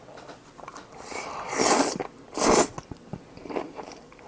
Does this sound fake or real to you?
real